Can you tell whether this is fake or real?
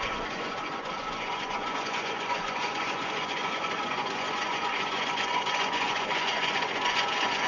fake